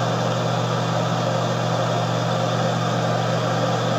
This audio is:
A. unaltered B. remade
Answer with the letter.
A